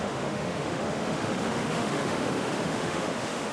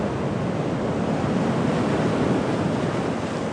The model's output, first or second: first